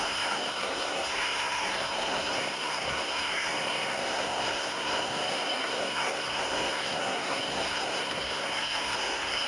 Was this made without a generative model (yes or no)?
no